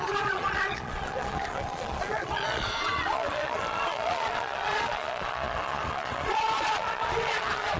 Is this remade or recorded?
remade